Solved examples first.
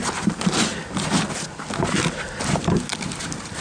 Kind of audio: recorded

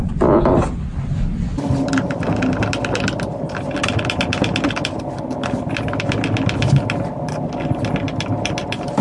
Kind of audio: recorded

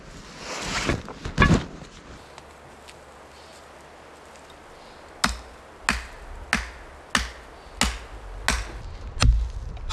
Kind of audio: recorded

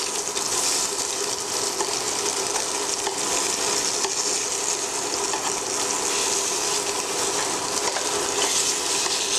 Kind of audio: recorded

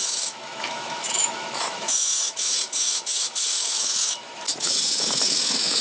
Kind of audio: remade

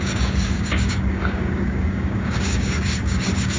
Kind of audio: remade